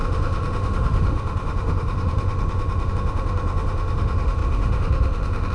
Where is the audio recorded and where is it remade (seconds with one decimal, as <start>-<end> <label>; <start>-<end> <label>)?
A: 0.0-5.5 remade